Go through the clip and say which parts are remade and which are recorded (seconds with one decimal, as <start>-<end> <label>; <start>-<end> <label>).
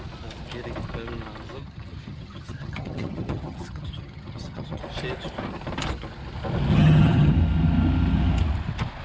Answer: 0.0-1.6 recorded; 1.6-4.8 remade; 4.8-6.7 recorded; 6.7-7.3 remade; 7.3-9.0 recorded